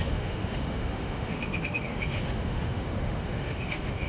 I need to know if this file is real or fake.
fake